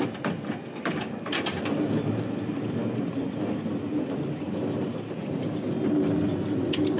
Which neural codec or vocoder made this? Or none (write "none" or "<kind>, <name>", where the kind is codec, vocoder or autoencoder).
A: none